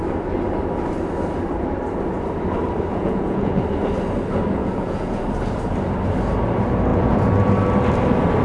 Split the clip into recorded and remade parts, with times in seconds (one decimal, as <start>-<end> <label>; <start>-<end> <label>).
0.0-2.9 recorded; 2.9-3.6 remade; 3.6-4.6 recorded; 4.6-5.2 remade; 5.2-6.9 recorded; 6.9-7.4 remade; 7.4-8.4 recorded